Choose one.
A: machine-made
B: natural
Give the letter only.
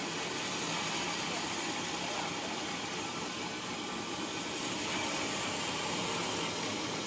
A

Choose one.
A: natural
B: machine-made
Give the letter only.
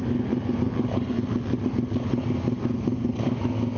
A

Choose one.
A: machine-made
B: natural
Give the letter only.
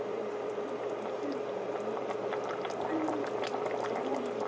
A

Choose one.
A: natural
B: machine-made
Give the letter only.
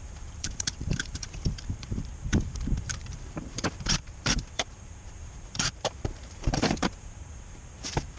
B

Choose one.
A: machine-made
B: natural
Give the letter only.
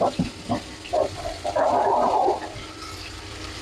B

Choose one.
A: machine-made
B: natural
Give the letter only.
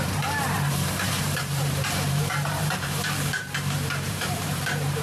A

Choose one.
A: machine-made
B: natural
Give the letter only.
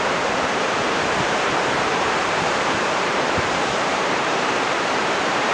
A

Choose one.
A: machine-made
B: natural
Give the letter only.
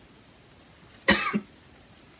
B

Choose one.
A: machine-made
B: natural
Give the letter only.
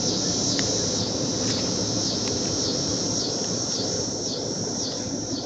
A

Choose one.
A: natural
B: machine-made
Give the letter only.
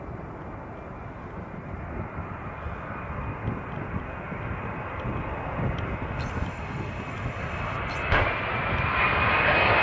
A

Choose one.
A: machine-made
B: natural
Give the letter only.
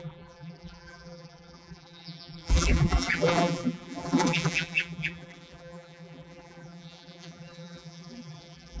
A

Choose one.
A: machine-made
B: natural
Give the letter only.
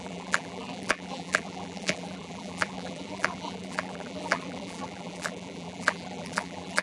A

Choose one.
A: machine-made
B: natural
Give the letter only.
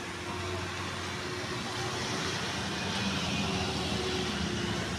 B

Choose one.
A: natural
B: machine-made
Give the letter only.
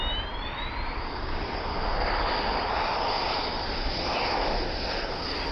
A